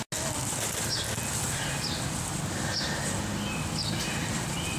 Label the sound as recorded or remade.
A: recorded